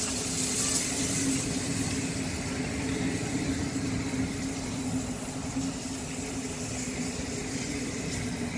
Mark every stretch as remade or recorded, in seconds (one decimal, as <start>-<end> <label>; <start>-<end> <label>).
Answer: 0.0-8.6 recorded